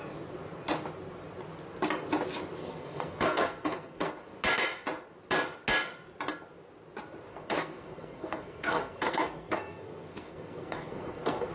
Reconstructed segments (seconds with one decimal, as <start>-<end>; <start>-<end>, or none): 2.6-4.1; 7.3-11.5